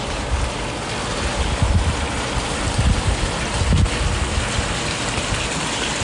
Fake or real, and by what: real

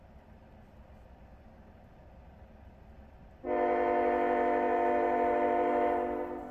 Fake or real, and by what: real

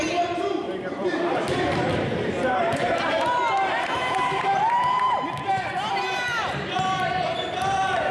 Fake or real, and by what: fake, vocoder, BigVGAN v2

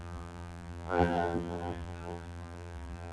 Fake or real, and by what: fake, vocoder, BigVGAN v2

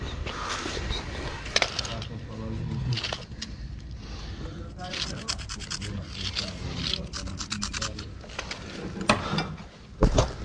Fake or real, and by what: real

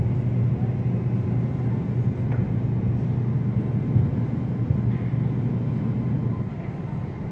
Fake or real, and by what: real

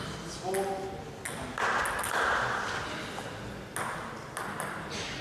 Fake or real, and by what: real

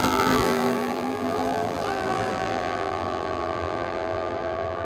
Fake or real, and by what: fake, vocoder, BigVGAN v2